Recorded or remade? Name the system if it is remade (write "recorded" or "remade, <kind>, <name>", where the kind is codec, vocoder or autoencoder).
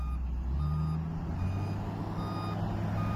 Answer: recorded